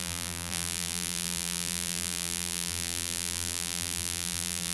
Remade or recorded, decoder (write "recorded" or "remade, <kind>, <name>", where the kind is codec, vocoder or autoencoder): remade, vocoder, BigVGAN v2